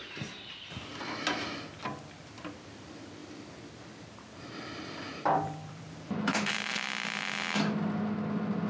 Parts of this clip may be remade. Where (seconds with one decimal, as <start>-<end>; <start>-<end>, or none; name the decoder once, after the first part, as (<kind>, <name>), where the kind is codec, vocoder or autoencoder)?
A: 3.2-6.6 (vocoder, BigVGAN v2)

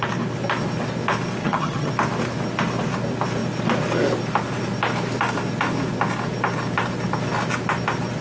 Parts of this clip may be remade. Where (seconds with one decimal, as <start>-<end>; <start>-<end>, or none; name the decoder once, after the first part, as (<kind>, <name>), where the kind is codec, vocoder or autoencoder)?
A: 1.4-1.9 (vocoder, HiFi-GAN)

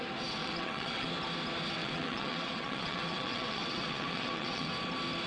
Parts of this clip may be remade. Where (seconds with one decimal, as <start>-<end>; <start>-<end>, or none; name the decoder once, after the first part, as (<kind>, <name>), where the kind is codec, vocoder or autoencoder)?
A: 0.4-1.1 (vocoder, WaveNeXt); 1.8-4.7

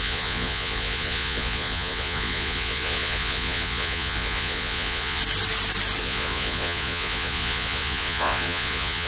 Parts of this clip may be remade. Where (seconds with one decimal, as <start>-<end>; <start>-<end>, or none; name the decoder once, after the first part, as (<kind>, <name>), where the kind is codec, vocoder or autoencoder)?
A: 0.0-5.2 (vocoder, Vocos); 6.0-9.1

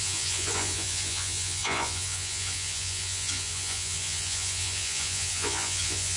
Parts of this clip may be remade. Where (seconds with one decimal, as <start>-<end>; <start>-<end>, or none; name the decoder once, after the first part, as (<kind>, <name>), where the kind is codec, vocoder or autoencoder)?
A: 0.0-6.2 (vocoder, Vocos)